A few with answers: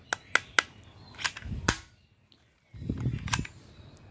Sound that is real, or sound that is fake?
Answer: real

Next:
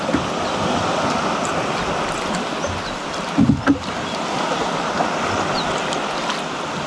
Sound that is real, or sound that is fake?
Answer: real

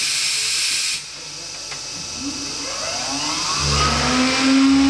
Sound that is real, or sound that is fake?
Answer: real